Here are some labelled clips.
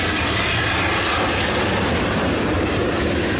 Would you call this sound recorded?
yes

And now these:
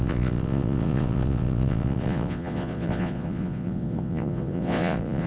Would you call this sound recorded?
no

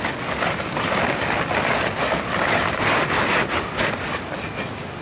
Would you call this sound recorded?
yes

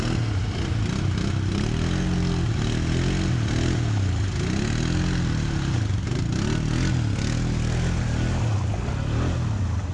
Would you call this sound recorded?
yes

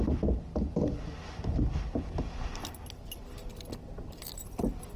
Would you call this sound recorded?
yes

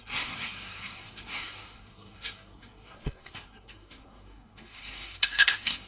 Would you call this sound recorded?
no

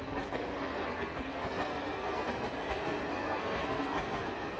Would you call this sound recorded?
no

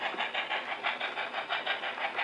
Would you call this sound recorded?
yes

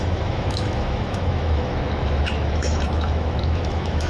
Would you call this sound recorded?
no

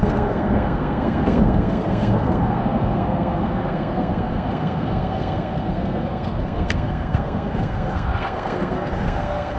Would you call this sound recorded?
no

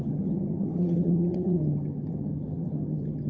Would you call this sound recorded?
no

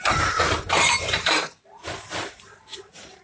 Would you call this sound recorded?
no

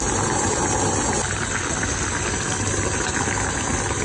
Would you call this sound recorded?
yes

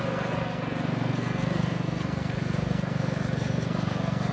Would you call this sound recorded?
no